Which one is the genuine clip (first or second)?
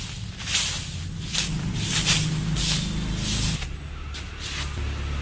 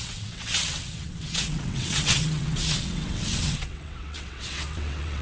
first